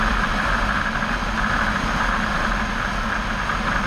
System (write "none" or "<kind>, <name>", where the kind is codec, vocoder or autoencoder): none